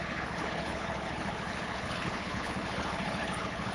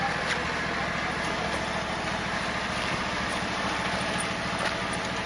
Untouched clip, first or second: second